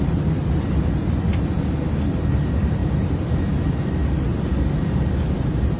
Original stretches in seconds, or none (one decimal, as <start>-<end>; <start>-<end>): 1.3-2.3; 2.8-3.4

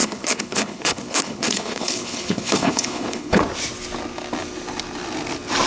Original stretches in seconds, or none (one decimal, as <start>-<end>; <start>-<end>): 3.4-5.7

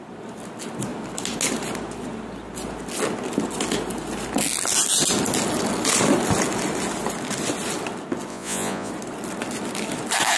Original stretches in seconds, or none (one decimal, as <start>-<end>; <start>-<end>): 0.0-8.3; 8.9-10.4

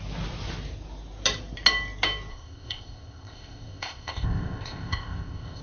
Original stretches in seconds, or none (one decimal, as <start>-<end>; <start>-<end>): 0.0-2.3

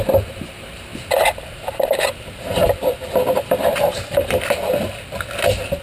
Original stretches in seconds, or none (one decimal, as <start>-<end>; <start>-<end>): 0.0-0.9; 4.4-5.8

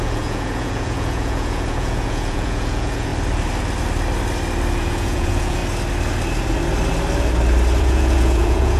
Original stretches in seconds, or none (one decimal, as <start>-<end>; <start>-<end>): 3.1-4.7; 5.6-7.8

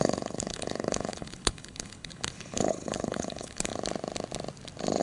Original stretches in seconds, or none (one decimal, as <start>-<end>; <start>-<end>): 3.7-5.0

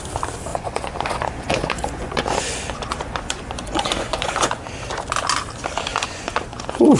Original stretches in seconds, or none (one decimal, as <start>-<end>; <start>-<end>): 0.0-0.5; 4.7-5.9